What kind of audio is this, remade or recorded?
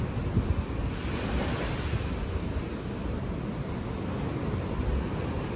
recorded